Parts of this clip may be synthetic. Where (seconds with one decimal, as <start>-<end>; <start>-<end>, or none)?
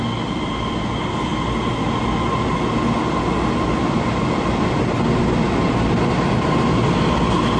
none